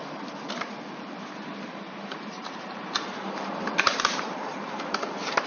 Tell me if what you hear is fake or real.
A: fake